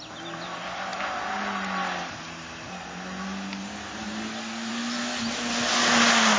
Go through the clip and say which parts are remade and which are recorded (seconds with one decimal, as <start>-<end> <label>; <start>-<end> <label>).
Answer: 0.0-6.4 recorded